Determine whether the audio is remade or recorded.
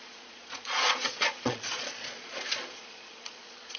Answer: remade